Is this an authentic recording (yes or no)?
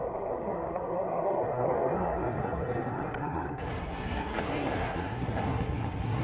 no